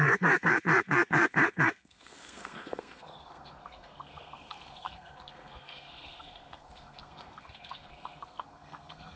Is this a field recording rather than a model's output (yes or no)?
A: no